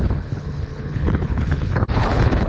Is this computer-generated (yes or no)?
yes